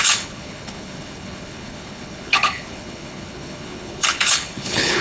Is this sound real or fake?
fake